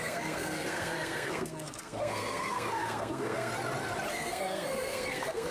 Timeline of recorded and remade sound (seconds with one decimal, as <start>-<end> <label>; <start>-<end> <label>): 0.0-3.5 remade; 3.5-4.1 recorded; 4.1-5.5 remade

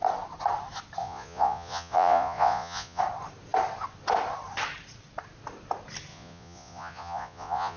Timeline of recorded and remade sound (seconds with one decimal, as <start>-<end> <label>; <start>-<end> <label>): 0.0-1.0 recorded; 1.0-3.0 remade; 3.0-6.1 recorded; 6.1-7.8 remade

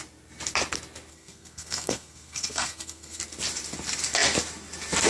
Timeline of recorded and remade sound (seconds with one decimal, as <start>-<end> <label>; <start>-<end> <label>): 0.0-1.1 recorded; 1.1-3.2 remade; 3.2-5.1 recorded